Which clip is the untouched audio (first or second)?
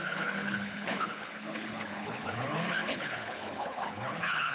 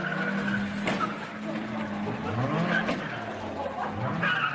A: second